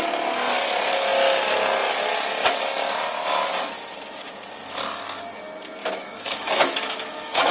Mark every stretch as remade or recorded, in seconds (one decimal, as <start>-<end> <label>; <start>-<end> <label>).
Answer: 0.0-5.8 recorded; 5.8-7.5 remade